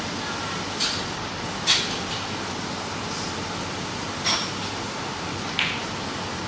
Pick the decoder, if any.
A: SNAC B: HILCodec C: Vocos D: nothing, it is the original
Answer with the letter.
D